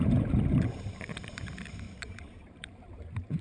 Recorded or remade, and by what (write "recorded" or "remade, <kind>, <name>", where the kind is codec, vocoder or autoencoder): remade, vocoder, BigVGAN v2